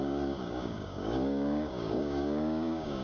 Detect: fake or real fake